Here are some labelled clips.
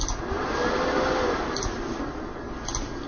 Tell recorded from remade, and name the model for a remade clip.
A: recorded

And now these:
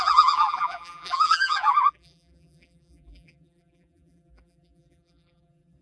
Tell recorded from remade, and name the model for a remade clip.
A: remade, vocoder, BigVGAN v2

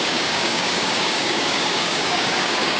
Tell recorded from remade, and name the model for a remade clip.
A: remade, codec, DAC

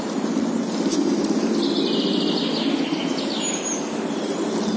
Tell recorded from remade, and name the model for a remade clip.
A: recorded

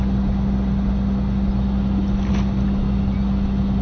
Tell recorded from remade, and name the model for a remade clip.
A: recorded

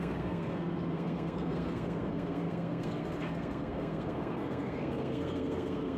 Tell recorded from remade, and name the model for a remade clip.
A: remade, codec, SNAC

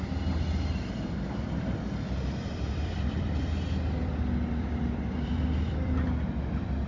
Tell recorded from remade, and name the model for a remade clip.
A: remade, vocoder, BigVGAN v2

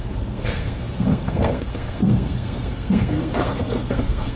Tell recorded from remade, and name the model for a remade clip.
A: remade, codec, SNAC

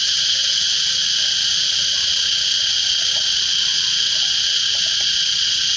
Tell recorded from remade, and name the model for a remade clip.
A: recorded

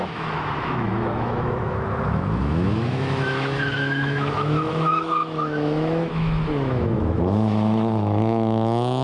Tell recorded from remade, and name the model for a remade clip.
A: remade, autoencoder, DAC-VAE